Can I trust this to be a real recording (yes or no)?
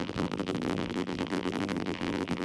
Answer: no